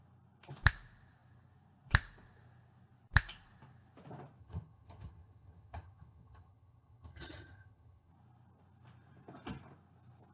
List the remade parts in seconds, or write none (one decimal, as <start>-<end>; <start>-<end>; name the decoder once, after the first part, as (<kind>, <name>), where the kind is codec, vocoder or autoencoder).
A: 4.4-8.1 (vocoder, HiFi-GAN)